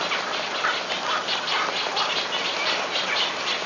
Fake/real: real